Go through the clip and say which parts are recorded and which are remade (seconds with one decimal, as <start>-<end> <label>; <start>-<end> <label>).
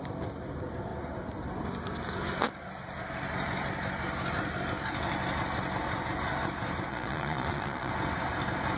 0.0-6.9 recorded; 6.9-7.9 remade; 7.9-8.8 recorded